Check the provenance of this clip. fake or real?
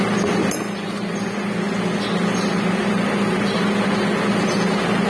real